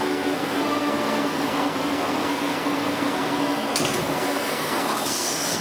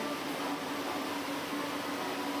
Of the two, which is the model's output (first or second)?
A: first